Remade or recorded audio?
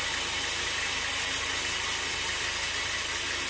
recorded